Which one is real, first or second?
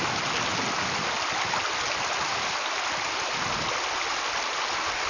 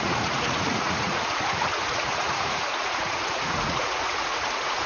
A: first